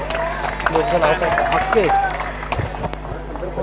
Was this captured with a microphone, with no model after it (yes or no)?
yes